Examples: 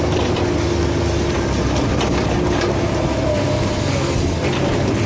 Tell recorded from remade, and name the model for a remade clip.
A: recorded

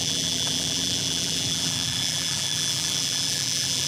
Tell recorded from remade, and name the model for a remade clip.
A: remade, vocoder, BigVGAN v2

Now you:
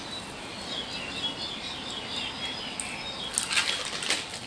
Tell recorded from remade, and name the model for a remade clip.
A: recorded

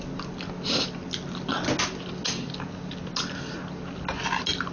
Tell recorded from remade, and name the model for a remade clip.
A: recorded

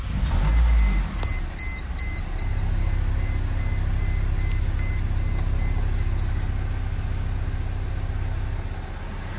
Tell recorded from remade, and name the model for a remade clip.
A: recorded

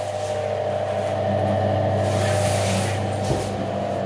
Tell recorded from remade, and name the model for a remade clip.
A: recorded